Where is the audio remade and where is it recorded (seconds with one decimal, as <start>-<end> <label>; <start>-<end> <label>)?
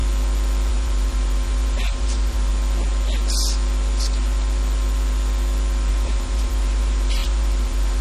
0.0-0.7 recorded; 0.7-2.5 remade; 2.5-5.9 recorded; 5.9-8.0 remade